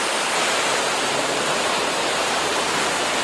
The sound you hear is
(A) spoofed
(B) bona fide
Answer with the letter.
A